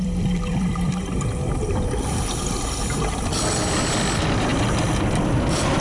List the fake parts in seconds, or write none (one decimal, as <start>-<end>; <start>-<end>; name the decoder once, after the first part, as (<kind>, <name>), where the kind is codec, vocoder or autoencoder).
0.0-4.5 (vocoder, BigVGAN v2)